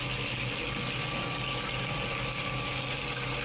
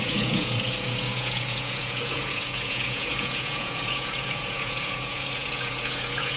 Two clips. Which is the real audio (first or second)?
first